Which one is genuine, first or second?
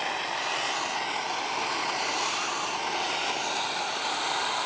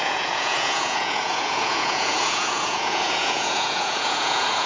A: first